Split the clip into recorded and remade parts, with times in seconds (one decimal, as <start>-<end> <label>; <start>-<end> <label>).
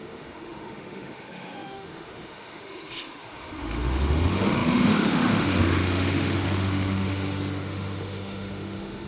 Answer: 0.0-9.1 remade